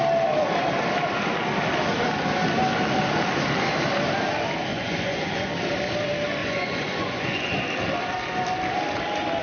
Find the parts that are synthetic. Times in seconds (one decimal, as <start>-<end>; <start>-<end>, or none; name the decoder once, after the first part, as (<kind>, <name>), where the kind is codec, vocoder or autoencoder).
4.7-5.5 (vocoder, Vocos); 6.4-7.5